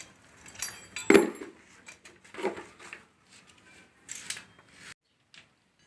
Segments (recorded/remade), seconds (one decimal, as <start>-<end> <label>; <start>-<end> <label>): 0.0-5.9 recorded